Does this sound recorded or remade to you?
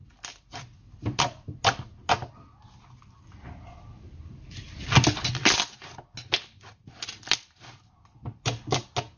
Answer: recorded